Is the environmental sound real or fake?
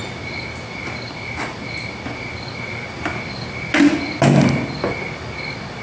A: real